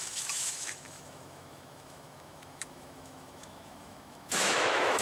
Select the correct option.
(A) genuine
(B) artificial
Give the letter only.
B